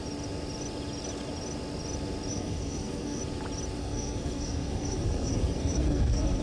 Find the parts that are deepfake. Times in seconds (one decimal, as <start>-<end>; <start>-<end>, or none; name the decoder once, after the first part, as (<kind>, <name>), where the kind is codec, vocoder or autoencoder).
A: 2.3-3.2 (codec, SNAC); 3.8-6.4